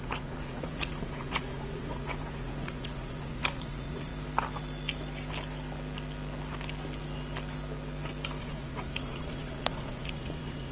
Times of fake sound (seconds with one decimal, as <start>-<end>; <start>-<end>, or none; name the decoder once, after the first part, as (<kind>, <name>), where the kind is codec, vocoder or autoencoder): 0.0-4.1 (vocoder, Vocos); 8.4-10.7